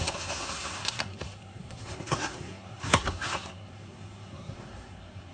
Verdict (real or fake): fake